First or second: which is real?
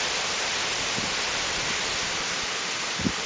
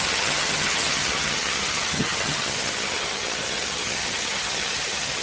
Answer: first